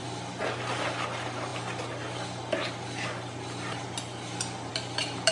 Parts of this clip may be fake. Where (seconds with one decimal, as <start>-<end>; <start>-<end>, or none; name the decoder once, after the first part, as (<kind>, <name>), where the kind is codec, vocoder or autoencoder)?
none